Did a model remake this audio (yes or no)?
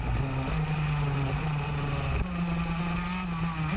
no